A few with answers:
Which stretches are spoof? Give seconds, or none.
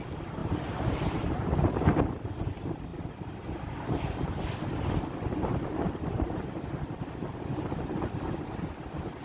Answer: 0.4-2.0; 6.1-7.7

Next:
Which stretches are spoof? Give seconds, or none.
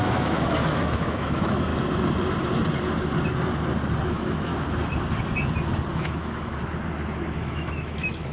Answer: 0.0-1.7; 4.1-4.5; 5.9-6.6; 7.4-8.3